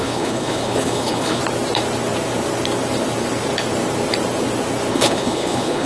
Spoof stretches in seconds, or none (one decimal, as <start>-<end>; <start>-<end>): 0.0-1.4; 4.9-5.9